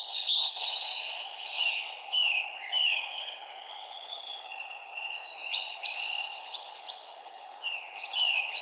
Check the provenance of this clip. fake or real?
fake